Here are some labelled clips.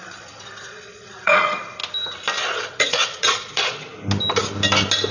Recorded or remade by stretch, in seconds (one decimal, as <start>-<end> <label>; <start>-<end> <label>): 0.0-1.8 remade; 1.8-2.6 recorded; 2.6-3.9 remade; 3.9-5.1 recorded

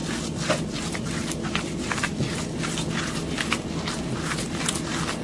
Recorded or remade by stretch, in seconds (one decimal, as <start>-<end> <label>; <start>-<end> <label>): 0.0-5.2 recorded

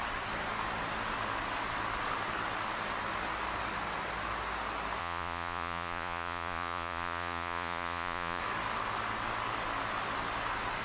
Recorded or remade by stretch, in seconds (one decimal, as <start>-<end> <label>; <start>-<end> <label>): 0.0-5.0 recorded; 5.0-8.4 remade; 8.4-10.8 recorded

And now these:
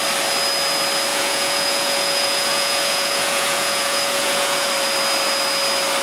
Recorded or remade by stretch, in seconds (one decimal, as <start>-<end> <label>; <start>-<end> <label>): 0.0-1.1 recorded; 1.1-4.7 remade; 4.7-6.0 recorded

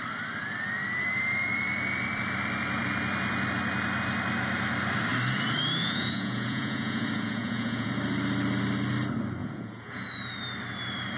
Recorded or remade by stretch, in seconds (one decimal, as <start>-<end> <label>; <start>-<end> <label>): 0.0-5.8 recorded; 5.8-7.9 remade; 7.9-9.4 recorded; 9.4-10.1 remade; 10.1-11.2 recorded